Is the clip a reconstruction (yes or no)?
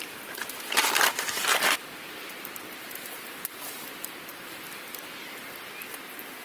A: yes